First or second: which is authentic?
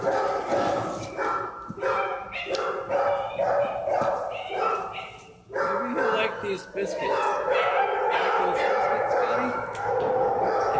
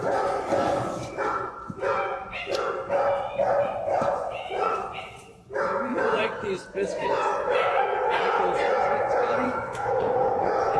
first